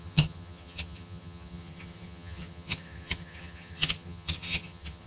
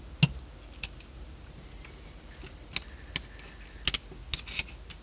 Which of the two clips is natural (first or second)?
second